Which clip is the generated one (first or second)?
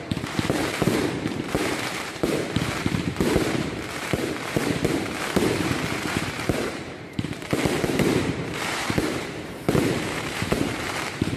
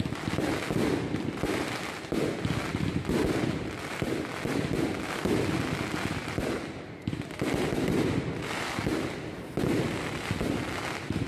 first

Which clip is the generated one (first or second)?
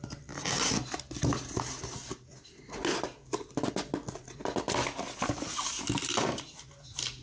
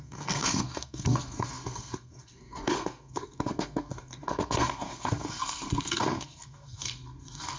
second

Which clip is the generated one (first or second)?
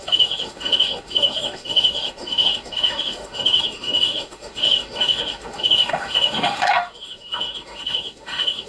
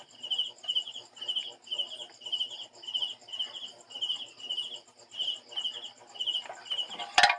first